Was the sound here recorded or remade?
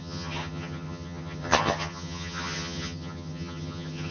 remade